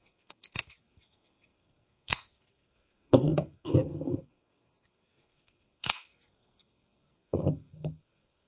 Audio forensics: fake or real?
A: fake